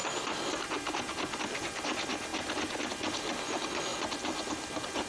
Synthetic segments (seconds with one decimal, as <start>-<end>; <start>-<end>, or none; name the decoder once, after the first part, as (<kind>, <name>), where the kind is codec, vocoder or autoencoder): none